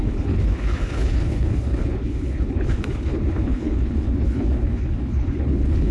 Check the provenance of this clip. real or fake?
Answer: fake